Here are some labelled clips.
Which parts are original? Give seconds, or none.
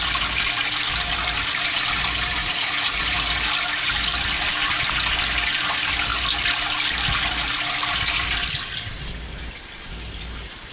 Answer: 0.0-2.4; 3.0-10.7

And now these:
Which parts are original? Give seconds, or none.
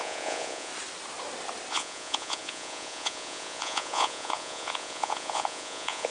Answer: 0.7-1.7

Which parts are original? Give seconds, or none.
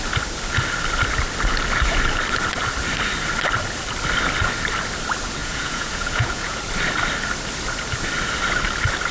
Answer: 0.0-5.4; 6.6-9.1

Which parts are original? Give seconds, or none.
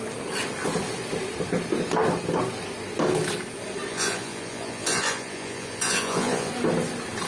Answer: 0.0-3.9; 6.5-7.3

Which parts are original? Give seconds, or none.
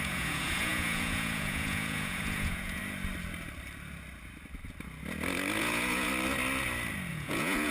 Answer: 2.8-5.6; 6.1-7.1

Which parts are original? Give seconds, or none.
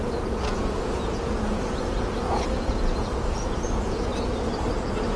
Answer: 4.1-4.8